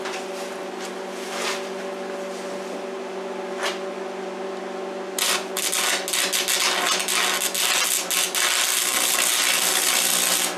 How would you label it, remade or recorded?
recorded